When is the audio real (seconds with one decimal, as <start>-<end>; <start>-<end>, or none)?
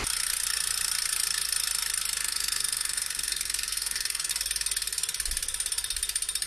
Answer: 0.0-2.2; 4.3-6.5